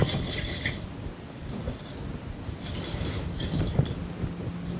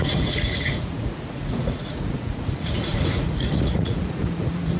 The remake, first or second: second